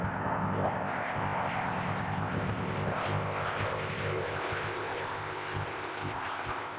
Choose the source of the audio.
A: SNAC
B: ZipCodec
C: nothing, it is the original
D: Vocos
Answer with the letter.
B